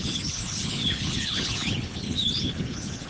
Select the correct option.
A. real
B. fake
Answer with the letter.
B